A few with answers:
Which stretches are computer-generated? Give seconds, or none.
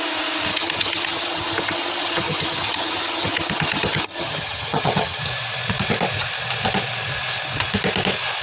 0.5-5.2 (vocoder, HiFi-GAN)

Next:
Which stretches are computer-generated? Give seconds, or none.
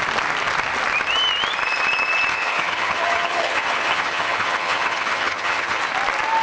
2.3-5.8 (vocoder, HiFi-GAN)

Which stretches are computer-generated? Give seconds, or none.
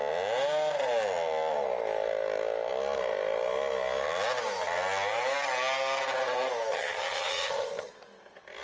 6.7-7.9 (vocoder, HiFi-GAN)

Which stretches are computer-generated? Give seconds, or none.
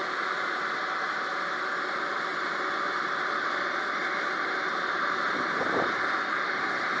none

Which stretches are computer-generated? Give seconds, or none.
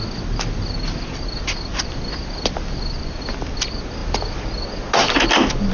none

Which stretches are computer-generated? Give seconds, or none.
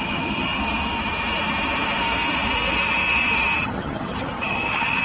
0.0-0.6 (vocoder, HiFi-GAN); 3.6-5.0